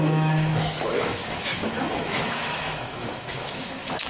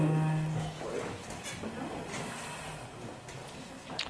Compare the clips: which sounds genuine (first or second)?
second